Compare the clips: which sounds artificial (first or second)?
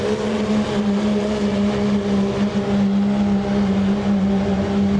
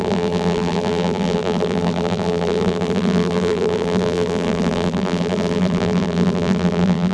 second